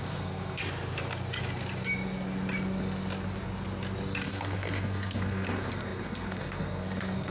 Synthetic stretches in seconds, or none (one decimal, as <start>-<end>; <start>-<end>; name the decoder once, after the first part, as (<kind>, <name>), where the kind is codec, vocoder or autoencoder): 0.0-0.6 (codec, SNAC); 4.3-7.3